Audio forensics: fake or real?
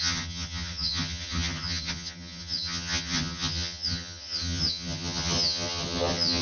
fake